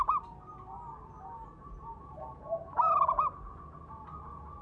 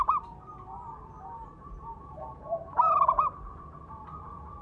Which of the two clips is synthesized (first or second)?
second